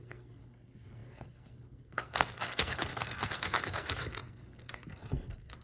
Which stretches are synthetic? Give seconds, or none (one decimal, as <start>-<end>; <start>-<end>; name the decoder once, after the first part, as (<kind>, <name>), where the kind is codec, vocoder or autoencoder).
0.0-5.6 (codec, SNAC)